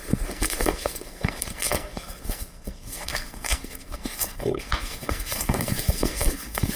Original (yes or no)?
no